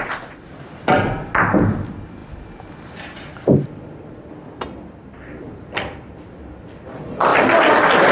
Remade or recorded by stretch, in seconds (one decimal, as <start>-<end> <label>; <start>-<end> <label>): 0.0-8.1 recorded